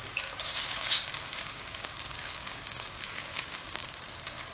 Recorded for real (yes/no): no